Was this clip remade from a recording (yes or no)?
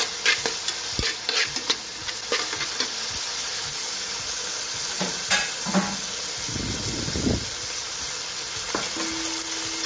no